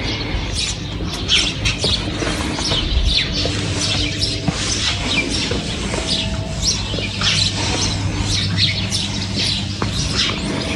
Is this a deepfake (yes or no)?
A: no